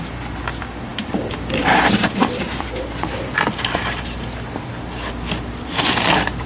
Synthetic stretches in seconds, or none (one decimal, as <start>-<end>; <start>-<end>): none